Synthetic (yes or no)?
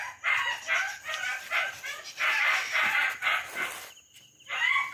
no